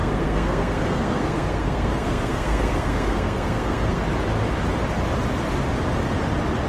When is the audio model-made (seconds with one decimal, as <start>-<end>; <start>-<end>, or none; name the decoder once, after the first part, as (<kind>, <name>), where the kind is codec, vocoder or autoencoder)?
0.0-4.0 (codec, SNAC)